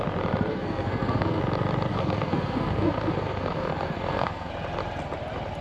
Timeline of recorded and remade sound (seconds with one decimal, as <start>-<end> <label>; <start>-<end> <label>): 0.0-0.5 recorded; 0.5-1.4 remade; 1.4-1.9 recorded; 1.9-4.5 remade; 4.5-5.6 recorded